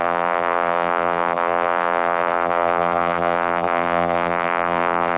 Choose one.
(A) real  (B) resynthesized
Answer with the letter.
B